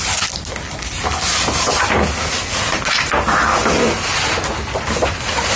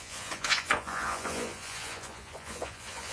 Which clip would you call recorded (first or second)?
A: first